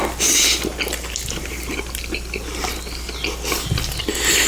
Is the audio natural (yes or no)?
yes